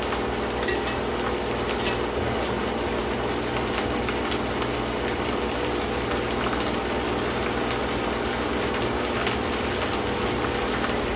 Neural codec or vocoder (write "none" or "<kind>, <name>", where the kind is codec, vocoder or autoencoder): none